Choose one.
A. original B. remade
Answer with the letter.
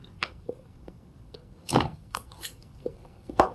B